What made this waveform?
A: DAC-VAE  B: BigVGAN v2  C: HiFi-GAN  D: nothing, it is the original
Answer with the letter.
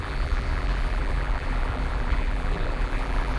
B